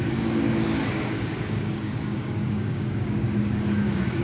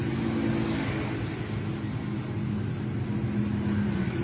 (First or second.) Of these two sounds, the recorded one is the second